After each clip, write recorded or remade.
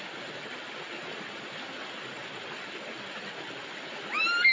recorded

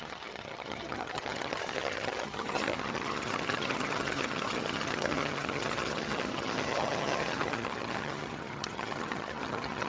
remade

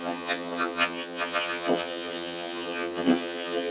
remade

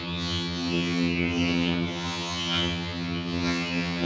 remade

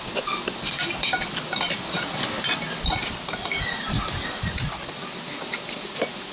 recorded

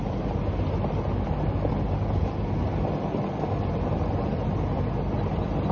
recorded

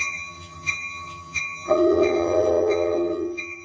remade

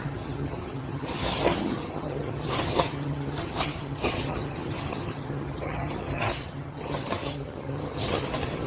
remade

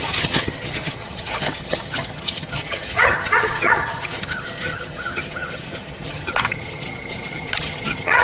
remade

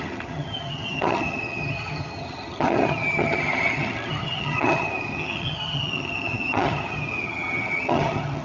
remade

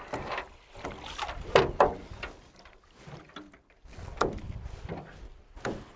recorded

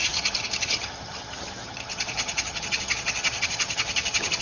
remade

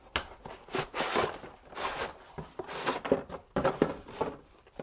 recorded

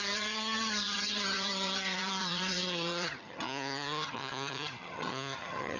remade